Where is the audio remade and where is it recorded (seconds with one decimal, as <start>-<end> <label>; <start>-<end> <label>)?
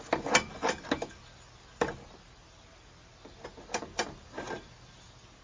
0.0-5.4 recorded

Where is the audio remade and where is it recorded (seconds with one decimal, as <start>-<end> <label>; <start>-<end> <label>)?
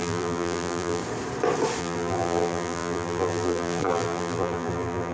0.0-1.0 remade; 1.0-1.8 recorded; 1.8-5.1 remade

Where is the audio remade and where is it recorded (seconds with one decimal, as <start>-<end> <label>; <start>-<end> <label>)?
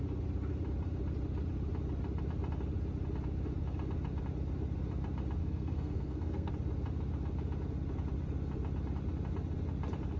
0.0-5.4 recorded; 5.4-6.5 remade; 6.5-10.2 recorded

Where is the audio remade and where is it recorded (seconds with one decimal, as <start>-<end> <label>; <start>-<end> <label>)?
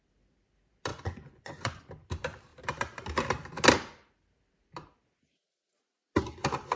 0.0-0.9 recorded; 0.9-1.8 remade; 1.8-6.8 recorded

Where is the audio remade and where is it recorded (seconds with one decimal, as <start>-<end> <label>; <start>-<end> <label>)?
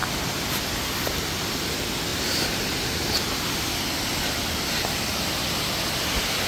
0.0-6.5 recorded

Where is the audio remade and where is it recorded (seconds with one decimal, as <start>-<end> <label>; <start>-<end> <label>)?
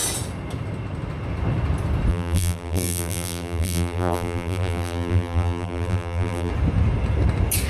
0.0-2.1 recorded; 2.1-6.5 remade; 6.5-7.7 recorded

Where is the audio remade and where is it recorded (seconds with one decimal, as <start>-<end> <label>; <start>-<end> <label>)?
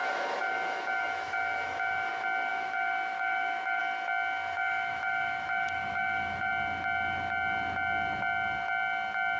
0.0-2.1 remade; 2.1-2.5 recorded; 2.5-3.8 remade; 3.8-4.5 recorded; 4.5-6.5 remade; 6.5-9.4 recorded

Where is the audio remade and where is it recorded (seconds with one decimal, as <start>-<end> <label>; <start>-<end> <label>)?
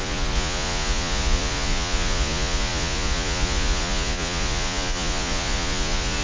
0.0-6.2 remade